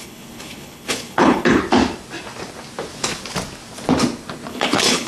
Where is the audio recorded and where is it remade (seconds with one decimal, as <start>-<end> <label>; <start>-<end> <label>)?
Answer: 0.0-1.6 remade; 1.6-4.5 recorded; 4.5-5.1 remade

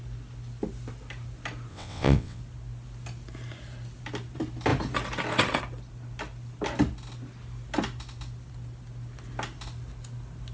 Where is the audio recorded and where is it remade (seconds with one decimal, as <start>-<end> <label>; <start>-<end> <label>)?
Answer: 0.0-1.7 recorded; 1.7-2.4 remade; 2.4-10.5 recorded